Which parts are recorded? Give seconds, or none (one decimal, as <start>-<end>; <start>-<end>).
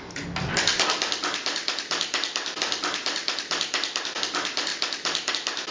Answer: 0.0-0.7; 4.0-5.7